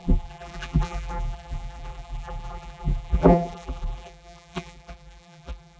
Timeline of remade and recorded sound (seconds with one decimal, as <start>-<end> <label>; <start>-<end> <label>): 0.0-5.8 remade